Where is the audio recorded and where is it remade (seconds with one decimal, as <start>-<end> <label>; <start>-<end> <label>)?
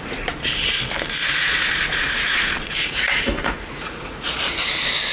0.0-1.2 recorded; 1.2-4.3 remade; 4.3-5.1 recorded